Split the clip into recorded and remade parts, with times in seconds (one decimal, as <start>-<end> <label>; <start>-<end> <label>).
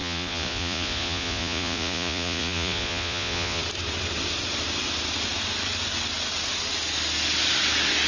0.0-3.6 remade; 3.6-8.1 recorded